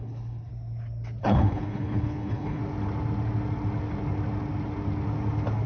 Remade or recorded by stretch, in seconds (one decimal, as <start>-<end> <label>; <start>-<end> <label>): 0.0-0.5 remade; 0.5-1.2 recorded; 1.2-2.6 remade; 2.6-5.7 recorded